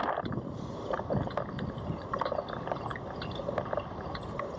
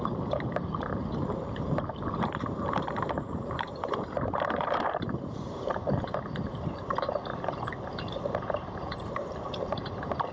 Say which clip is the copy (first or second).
second